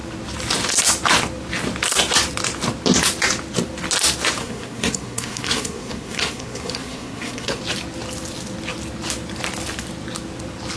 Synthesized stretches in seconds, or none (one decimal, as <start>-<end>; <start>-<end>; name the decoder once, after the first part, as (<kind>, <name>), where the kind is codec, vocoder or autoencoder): 4.4-7.6 (codec, SNAC)